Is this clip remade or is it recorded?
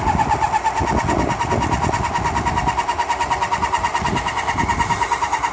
recorded